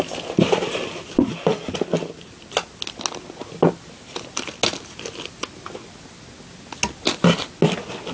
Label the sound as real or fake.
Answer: real